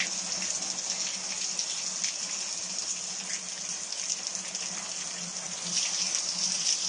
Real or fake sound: real